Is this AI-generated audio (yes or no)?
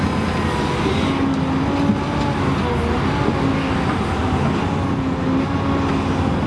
no